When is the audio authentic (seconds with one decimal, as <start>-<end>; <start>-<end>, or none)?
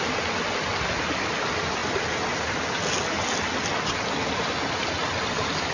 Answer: 0.0-5.7